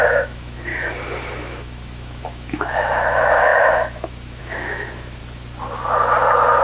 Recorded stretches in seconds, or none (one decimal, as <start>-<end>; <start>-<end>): 0.7-1.4; 5.2-6.6